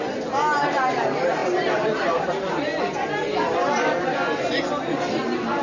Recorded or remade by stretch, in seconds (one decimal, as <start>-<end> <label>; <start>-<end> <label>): 0.0-1.4 recorded; 1.4-2.3 remade; 2.3-5.6 recorded